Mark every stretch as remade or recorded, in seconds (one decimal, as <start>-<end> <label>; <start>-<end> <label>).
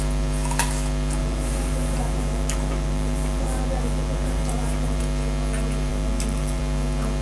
0.0-1.2 recorded; 1.2-5.0 remade; 5.0-5.9 recorded; 5.9-6.6 remade; 6.6-7.2 recorded